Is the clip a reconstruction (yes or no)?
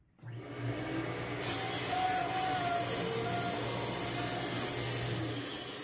no